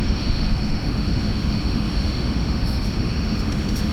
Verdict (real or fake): fake